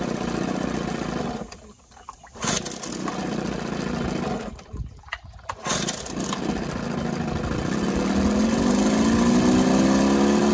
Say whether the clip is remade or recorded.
recorded